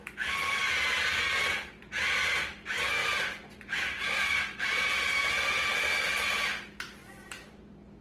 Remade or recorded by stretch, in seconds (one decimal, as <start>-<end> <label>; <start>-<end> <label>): 0.0-3.0 recorded; 3.0-5.0 remade; 5.0-7.0 recorded; 7.0-7.5 remade; 7.5-8.0 recorded